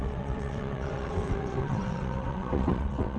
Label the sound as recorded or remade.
remade